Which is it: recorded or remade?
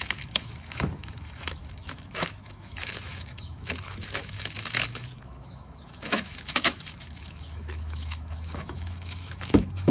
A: remade